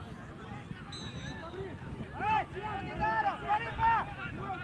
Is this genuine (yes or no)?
yes